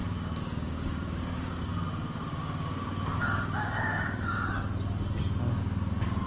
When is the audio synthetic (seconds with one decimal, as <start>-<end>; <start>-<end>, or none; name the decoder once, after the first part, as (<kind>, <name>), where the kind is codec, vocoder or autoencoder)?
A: 0.0-1.6 (codec, DAC); 2.3-4.3